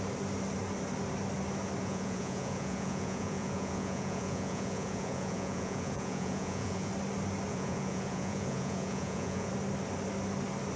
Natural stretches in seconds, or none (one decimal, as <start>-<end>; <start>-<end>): 0.0-1.8; 6.9-7.5; 9.5-10.8